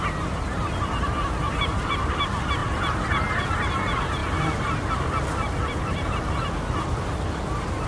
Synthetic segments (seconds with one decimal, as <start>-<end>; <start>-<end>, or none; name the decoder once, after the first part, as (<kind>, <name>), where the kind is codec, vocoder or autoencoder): none